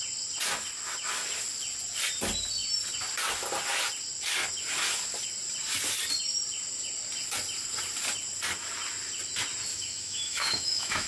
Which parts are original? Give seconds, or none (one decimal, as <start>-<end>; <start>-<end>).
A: 0.0-9.7